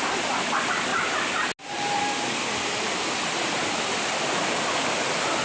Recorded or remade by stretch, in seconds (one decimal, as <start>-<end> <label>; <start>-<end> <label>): 0.0-5.4 recorded